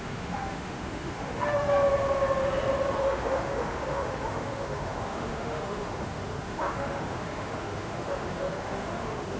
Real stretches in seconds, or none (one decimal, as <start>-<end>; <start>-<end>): 1.7-3.0